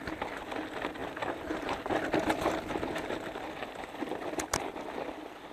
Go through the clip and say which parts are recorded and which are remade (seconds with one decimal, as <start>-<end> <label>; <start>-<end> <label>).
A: 0.0-5.5 recorded